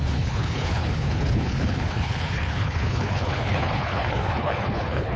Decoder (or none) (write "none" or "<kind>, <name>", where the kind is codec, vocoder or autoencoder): codec, HILCodec